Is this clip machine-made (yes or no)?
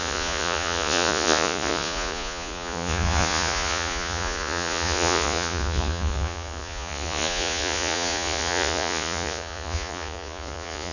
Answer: yes